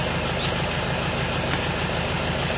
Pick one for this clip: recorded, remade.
recorded